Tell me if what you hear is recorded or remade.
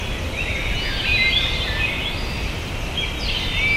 recorded